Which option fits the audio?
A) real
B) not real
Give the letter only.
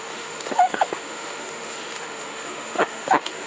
B